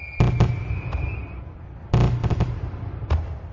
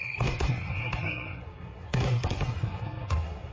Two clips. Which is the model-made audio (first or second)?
second